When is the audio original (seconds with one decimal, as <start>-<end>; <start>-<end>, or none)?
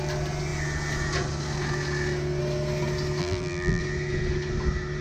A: 0.0-3.2; 3.8-5.0